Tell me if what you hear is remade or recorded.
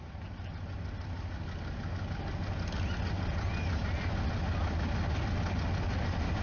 recorded